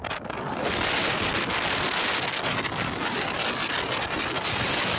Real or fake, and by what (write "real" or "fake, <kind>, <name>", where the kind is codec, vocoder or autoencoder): real